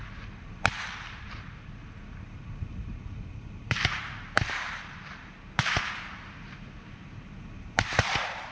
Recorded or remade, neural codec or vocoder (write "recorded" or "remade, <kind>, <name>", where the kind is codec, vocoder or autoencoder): remade, vocoder, BigVGAN v2